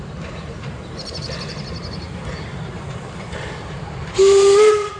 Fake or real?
fake